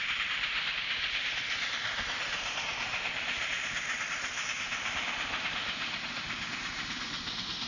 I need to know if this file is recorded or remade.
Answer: remade